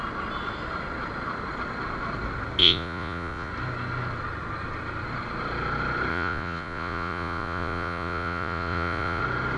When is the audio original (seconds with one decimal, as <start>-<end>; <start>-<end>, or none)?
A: 0.0-2.6; 3.5-6.1; 9.2-9.6